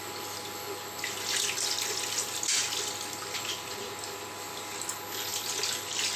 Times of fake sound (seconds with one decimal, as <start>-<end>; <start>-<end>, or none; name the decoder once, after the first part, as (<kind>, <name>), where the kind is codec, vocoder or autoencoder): none